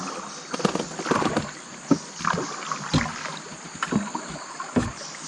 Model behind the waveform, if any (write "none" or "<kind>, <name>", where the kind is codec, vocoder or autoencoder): none